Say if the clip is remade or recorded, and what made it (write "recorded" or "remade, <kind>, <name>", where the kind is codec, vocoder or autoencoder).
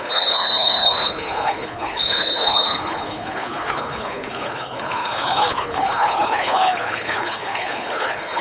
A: remade, codec, HILCodec